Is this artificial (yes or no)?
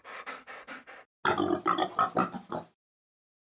no